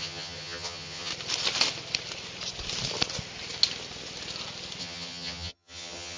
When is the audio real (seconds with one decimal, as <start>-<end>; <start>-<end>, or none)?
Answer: 1.1-4.8